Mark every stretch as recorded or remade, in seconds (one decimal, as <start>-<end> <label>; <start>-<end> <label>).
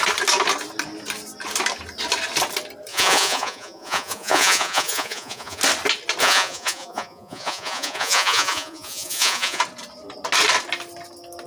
0.0-2.9 recorded; 2.9-5.6 remade; 5.6-6.2 recorded; 6.2-9.6 remade; 9.6-11.5 recorded